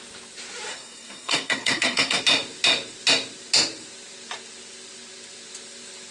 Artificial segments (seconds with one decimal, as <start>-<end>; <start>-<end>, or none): 0.7-2.2